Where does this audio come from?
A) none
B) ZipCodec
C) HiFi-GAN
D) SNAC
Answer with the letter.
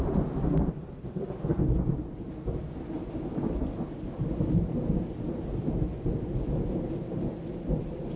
A